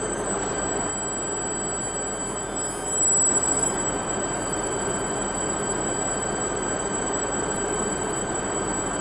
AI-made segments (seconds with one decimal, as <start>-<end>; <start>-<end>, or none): 0.0-0.9; 3.3-9.0